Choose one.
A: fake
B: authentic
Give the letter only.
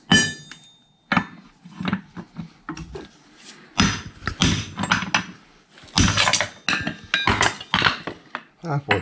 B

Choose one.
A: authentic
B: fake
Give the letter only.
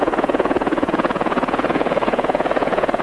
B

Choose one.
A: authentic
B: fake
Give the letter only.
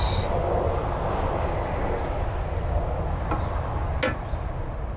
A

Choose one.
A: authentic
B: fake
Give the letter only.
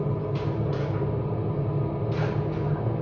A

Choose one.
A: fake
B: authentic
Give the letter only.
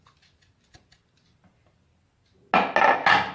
B